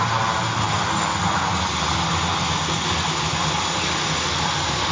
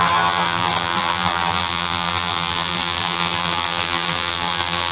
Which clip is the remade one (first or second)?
second